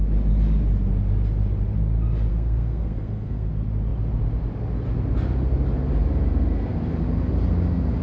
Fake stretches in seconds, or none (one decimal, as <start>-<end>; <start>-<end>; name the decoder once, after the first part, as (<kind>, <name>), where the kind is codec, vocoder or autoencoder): 2.3-3.5 (codec, SNAC)